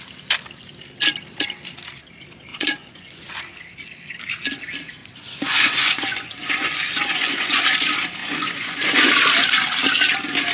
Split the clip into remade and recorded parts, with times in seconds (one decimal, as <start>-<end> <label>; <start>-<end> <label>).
0.0-2.5 recorded; 2.5-3.4 remade; 3.4-5.0 recorded; 5.0-7.6 remade; 7.6-8.2 recorded; 8.2-9.1 remade; 9.1-10.5 recorded